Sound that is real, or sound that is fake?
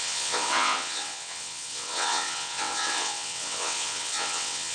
fake